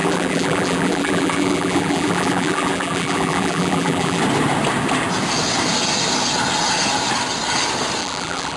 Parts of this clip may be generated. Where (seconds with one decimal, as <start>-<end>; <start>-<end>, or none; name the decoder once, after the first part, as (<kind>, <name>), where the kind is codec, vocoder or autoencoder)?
0.0-4.2 (vocoder, BigVGAN v2); 8.0-8.6